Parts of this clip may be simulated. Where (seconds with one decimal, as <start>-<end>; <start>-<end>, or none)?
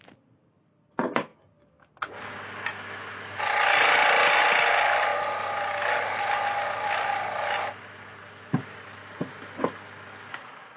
none